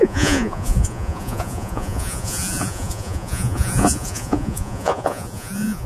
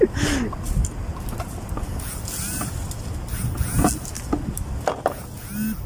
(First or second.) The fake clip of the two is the first